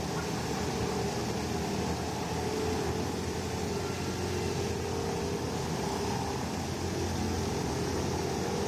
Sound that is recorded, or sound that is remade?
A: recorded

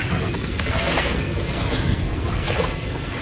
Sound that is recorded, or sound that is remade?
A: remade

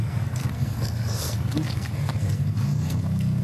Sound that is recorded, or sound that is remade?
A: remade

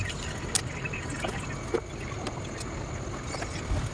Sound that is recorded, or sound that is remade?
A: recorded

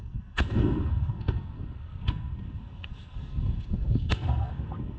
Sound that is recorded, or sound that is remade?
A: remade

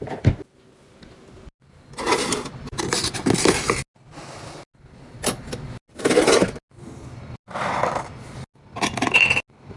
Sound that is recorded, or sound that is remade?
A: recorded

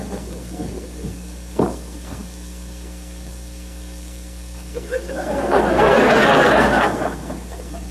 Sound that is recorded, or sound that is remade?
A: remade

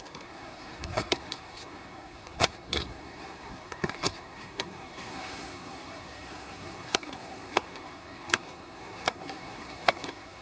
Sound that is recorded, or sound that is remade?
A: remade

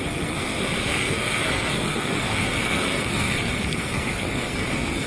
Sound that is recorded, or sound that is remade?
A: remade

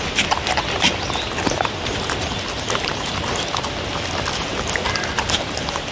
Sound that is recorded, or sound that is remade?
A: recorded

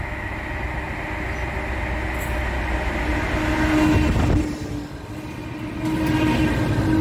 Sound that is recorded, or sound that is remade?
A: recorded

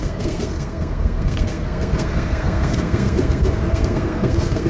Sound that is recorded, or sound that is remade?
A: remade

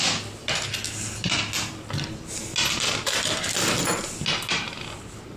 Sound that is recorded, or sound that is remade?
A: recorded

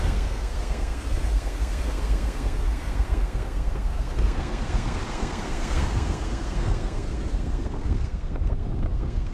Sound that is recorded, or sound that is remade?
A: remade